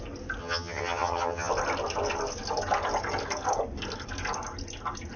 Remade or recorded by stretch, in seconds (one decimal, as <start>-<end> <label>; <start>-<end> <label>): 0.0-0.4 recorded; 0.4-1.5 remade; 1.5-5.2 recorded